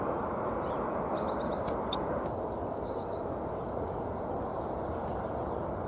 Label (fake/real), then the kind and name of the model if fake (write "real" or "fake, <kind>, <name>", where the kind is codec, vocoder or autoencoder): real